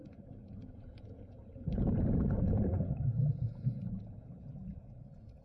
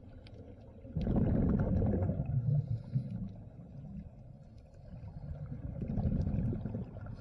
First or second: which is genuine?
second